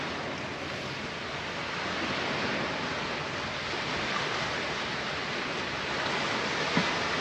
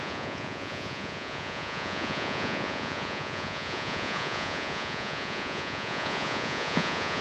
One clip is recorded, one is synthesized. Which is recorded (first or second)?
first